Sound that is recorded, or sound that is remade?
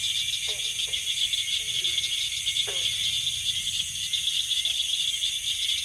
recorded